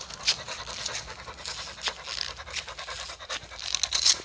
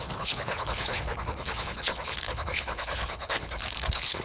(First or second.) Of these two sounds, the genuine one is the first